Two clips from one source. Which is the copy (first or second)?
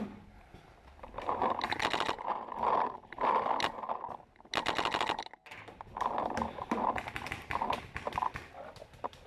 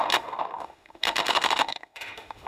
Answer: second